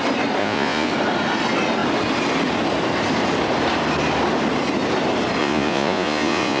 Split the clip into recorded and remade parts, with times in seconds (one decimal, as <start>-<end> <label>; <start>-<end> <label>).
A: 0.0-0.4 recorded; 0.4-0.9 remade; 0.9-5.4 recorded; 5.4-6.6 remade